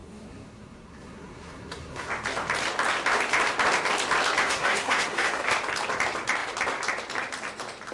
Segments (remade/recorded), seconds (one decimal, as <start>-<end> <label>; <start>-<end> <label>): 0.0-2.1 remade; 2.1-4.4 recorded; 4.4-5.5 remade; 5.5-7.9 recorded